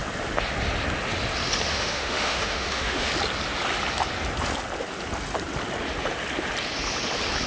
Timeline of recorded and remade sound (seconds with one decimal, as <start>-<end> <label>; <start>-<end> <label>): 0.0-1.7 recorded; 1.7-3.1 remade; 3.1-7.5 recorded